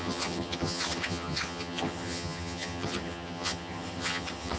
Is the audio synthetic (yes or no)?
yes